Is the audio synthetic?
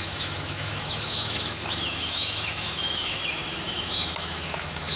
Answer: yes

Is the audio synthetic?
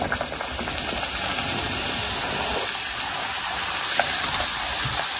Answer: no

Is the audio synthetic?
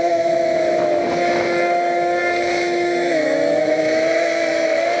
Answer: yes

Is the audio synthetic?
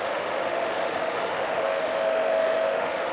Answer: yes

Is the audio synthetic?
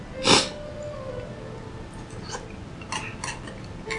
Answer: no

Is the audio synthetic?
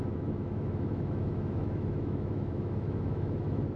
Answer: yes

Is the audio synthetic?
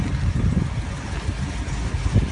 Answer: no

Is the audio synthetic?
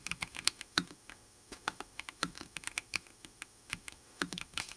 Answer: yes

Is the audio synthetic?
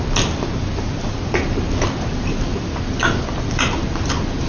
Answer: no